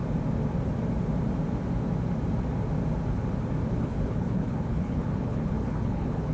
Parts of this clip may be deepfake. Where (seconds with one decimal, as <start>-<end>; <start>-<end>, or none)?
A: 3.7-6.3

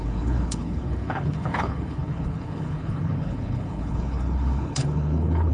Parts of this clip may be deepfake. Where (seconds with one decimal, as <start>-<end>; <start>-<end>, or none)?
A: 0.0-5.5

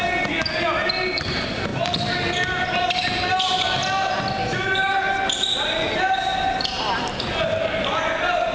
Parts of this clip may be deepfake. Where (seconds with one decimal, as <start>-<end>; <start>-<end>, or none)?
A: none

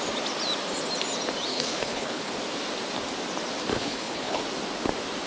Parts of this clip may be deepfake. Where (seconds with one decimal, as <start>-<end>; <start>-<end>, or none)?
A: 1.5-2.3; 3.7-4.4